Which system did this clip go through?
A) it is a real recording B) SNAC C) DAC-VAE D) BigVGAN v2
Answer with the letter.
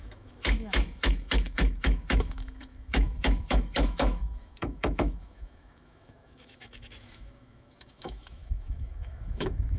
C